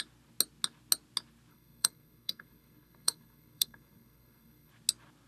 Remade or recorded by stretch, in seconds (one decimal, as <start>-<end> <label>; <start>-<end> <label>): 0.0-1.5 recorded; 1.5-4.7 remade; 4.7-5.3 recorded